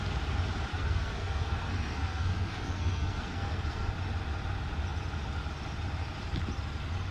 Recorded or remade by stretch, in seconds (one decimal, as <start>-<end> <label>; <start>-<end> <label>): 0.0-0.7 recorded; 0.7-3.9 remade; 3.9-7.1 recorded